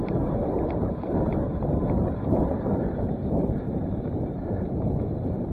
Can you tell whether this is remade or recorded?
remade